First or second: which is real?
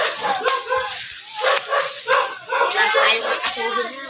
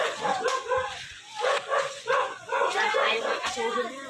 first